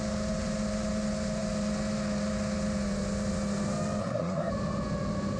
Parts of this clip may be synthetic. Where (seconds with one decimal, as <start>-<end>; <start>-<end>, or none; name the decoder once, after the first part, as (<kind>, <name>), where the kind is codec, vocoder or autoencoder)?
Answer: 4.0-4.5 (codec, SNAC)